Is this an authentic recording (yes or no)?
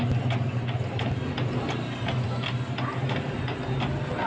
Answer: yes